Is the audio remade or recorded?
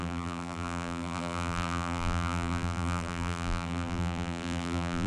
remade